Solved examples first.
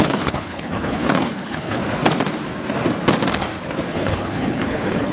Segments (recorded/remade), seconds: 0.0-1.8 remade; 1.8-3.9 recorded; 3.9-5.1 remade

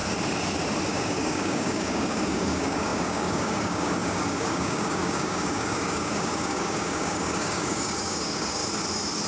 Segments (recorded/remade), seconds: 0.0-0.9 recorded; 0.9-8.6 remade; 8.6-9.3 recorded

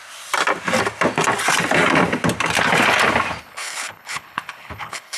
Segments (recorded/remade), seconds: 0.0-3.4 recorded; 3.4-5.2 remade

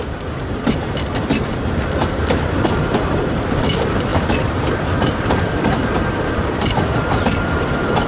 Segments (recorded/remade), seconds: 0.0-8.1 remade

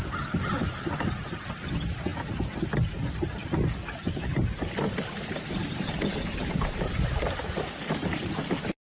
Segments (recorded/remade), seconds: 0.0-2.1 recorded; 2.1-2.7 remade; 2.7-5.6 recorded; 5.6-7.4 remade; 7.4-8.9 recorded

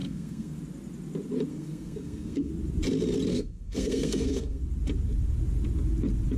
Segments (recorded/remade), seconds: 0.0-0.6 remade; 0.6-1.5 recorded; 1.5-2.5 remade; 2.5-3.3 recorded; 3.3-4.6 remade; 4.6-6.4 recorded

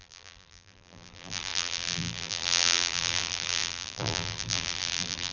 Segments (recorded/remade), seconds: 0.0-5.3 remade